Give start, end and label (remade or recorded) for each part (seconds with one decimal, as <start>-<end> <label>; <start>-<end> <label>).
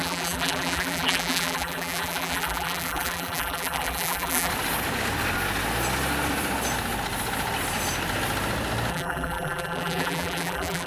0.0-4.5 remade; 4.5-8.9 recorded; 8.9-10.9 remade